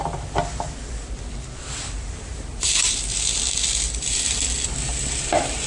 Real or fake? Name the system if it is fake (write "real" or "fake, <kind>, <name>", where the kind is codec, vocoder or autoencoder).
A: fake, vocoder, BigVGAN v2